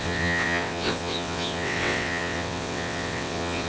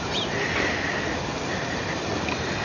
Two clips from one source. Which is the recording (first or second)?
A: second